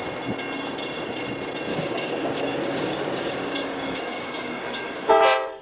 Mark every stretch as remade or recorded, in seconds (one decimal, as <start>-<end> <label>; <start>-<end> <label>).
0.0-1.7 recorded; 1.7-5.1 remade; 5.1-5.6 recorded